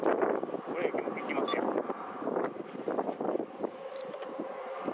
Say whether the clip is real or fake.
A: fake